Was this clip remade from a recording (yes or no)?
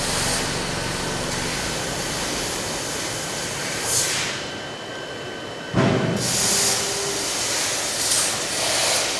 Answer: no